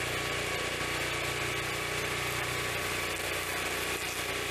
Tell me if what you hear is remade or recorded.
recorded